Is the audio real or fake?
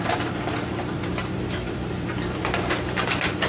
fake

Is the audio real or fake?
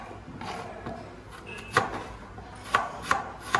real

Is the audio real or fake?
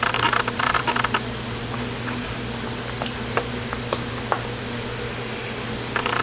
fake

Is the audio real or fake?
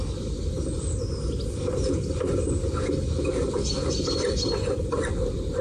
real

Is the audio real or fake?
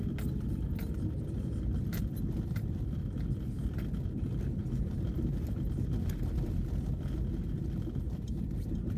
real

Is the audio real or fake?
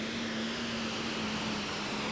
real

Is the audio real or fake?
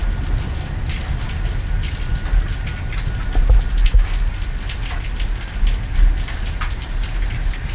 real